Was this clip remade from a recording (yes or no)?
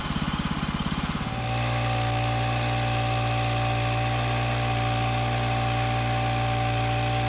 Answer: no